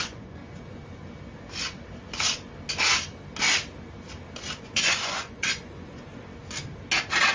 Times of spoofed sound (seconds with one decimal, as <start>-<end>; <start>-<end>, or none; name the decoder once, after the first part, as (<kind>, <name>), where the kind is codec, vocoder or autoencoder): 0.0-0.4 (vocoder, Vocos); 4.6-6.1

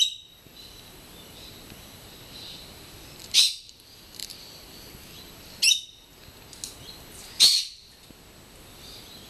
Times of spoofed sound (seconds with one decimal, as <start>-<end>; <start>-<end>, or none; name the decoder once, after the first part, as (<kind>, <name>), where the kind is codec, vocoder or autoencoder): 0.0-6.1 (vocoder, BigVGAN v2); 7.3-9.3

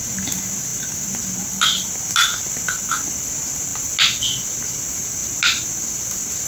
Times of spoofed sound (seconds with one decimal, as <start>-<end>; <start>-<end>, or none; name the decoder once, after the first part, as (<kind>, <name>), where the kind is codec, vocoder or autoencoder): none

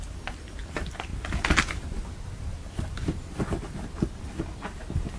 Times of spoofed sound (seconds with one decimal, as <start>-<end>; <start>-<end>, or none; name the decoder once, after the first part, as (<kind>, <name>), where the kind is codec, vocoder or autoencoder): none

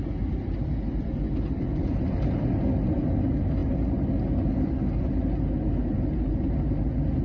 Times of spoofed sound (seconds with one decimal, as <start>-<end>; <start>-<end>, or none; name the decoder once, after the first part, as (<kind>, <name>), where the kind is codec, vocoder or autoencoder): none